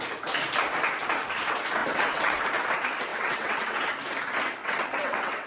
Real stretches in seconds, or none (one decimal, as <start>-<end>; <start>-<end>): 0.0-1.8; 2.4-3.1; 3.7-4.6